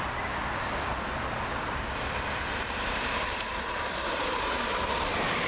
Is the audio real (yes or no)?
yes